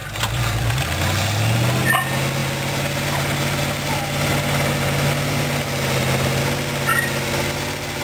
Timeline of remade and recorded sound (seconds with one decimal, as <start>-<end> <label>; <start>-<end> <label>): 0.0-0.7 remade; 0.7-2.4 recorded; 2.4-6.4 remade; 6.4-8.0 recorded